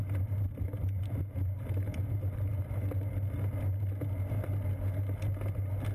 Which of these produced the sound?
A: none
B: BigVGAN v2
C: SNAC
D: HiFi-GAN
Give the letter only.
A